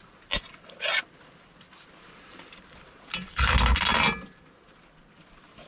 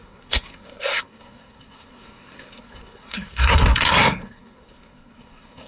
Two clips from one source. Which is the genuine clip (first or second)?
first